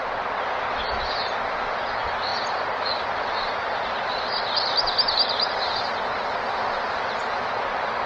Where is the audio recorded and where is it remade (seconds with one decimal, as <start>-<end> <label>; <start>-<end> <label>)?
0.0-8.1 recorded